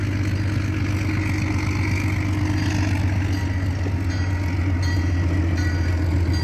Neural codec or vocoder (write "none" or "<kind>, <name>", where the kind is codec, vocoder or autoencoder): none